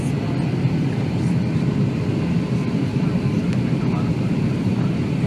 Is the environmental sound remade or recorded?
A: recorded